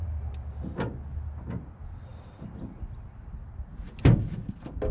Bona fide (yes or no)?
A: yes